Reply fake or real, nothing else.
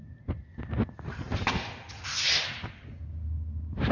real